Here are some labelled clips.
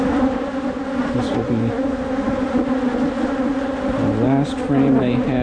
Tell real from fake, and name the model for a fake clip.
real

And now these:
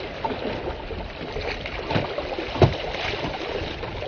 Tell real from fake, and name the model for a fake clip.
real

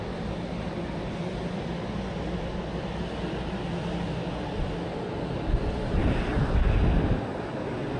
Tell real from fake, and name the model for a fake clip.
real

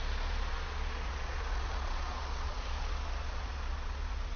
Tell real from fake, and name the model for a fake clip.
fake, vocoder, Vocos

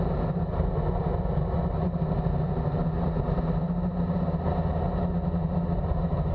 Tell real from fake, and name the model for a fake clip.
real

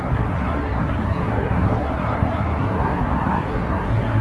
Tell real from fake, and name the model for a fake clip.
fake, codec, SNAC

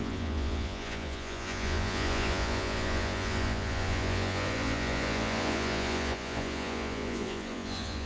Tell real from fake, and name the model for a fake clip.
fake, vocoder, Vocos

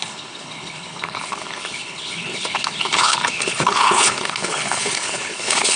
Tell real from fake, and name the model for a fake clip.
fake, codec, HILCodec